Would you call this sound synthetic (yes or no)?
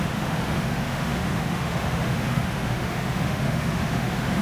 yes